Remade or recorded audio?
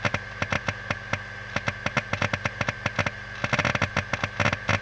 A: recorded